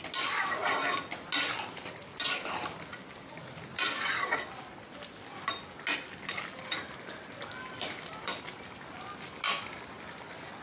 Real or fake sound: real